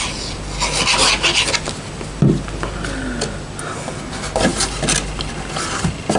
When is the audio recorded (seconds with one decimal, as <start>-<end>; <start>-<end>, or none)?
0.0-6.2